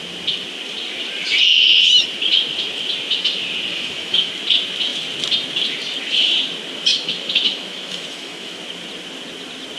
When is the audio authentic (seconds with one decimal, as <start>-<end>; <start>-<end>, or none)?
0.0-3.7; 4.3-6.9; 8.6-9.8